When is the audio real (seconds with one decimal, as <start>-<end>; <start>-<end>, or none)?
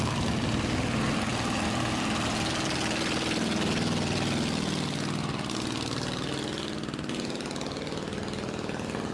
0.0-9.1